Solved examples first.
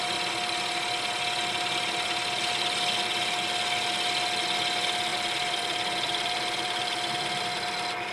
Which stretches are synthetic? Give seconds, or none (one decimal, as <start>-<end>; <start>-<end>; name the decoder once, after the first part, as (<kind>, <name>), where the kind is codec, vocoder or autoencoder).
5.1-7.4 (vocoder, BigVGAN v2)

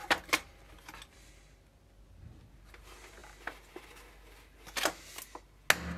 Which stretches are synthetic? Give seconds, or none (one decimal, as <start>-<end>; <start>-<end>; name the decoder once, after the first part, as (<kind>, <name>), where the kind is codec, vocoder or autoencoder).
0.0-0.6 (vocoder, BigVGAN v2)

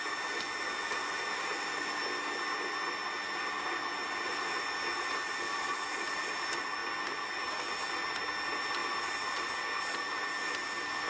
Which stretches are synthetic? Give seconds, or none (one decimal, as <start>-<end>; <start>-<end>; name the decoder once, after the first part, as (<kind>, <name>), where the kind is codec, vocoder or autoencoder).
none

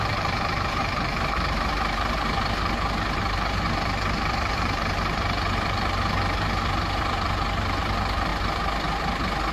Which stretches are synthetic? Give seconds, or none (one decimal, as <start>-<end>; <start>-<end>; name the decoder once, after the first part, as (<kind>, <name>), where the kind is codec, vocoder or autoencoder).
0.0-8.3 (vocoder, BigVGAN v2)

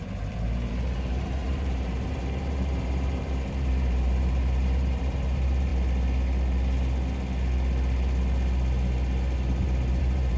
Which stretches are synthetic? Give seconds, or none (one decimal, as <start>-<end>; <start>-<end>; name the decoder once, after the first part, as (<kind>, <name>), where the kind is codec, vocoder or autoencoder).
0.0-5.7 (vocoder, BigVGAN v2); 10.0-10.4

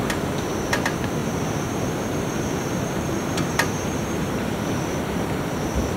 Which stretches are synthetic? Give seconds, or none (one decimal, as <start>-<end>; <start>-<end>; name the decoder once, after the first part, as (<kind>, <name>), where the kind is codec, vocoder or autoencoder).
1.2-4.8 (vocoder, BigVGAN v2)

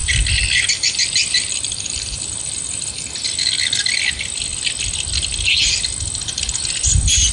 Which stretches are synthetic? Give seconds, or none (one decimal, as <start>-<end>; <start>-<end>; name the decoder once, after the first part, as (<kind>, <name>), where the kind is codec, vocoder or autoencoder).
0.0-2.9 (vocoder, BigVGAN v2)

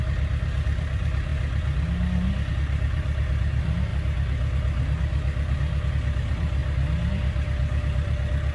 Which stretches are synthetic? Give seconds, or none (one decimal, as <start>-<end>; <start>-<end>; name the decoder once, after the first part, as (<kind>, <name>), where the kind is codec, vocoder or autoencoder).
0.0-1.3 (vocoder, BigVGAN v2); 2.5-3.9; 5.9-6.6; 7.1-8.5